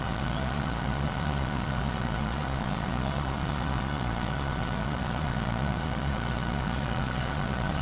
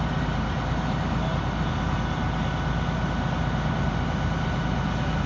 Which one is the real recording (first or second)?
second